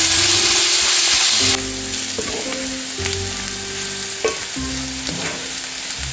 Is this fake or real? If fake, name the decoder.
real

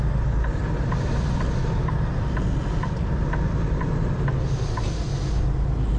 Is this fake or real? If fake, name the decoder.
real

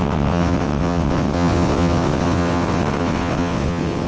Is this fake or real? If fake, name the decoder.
fake, vocoder, WaveNeXt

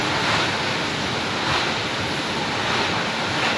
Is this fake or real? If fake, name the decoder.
real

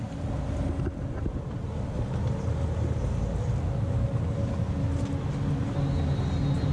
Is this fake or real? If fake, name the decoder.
real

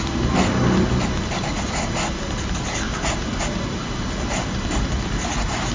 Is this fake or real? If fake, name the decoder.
real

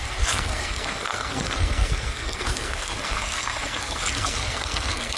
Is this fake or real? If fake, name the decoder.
fake, codec, SNAC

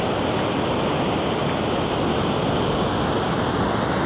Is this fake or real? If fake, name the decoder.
real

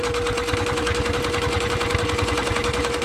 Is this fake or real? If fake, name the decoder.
real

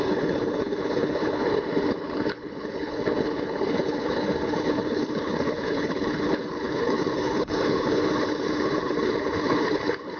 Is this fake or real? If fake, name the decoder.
fake, codec, HILCodec